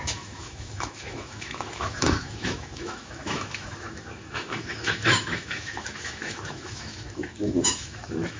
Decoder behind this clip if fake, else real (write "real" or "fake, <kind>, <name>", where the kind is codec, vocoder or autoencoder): fake, autoencoder, DAC-VAE